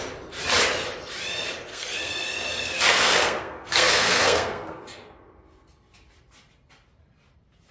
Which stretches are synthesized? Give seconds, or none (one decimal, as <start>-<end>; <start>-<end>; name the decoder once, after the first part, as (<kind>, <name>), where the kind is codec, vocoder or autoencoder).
1.7-4.8 (codec, SNAC)

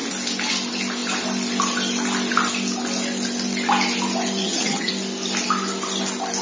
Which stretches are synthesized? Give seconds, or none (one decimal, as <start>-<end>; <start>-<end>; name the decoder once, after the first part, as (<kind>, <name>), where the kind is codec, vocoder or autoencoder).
4.4-4.9 (vocoder, HiFi-GAN)

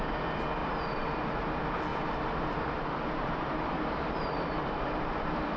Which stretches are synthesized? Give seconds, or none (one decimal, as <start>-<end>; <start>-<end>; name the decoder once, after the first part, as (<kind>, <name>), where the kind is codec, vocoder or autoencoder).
0.6-1.2 (vocoder, BigVGAN v2); 1.9-3.7; 4.6-5.6

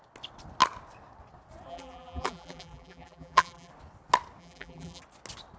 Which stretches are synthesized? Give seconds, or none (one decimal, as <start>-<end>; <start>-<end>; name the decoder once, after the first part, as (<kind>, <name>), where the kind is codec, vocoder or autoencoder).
1.7-3.7 (vocoder, BigVGAN v2); 4.4-5.0

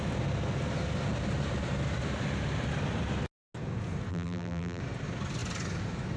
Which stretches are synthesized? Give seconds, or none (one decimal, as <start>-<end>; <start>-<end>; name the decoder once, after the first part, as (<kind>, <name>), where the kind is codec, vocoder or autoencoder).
4.1-4.8 (vocoder, BigVGAN v2)

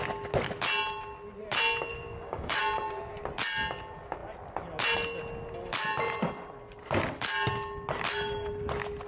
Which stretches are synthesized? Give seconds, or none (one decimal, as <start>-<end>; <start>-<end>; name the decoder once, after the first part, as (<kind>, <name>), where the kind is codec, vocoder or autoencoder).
1.9-2.6 (codec, DAC)

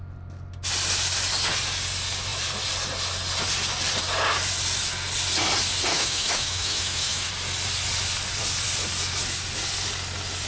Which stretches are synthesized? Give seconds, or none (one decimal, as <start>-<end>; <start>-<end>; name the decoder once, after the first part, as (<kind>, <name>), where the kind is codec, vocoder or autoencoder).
5.9-7.3 (autoencoder, DAC-VAE)